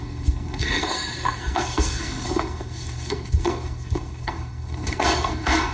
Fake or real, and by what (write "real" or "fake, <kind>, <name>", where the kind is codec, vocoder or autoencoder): fake, codec, SNAC